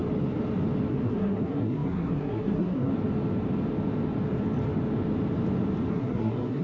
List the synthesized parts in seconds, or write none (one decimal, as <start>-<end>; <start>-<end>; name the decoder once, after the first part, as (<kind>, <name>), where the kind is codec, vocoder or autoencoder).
0.9-2.9 (codec, SNAC); 5.9-6.6